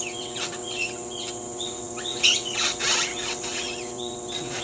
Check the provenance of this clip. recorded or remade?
remade